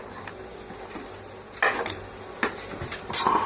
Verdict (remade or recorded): recorded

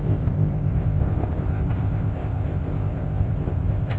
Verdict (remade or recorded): remade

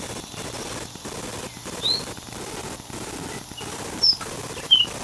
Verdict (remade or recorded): recorded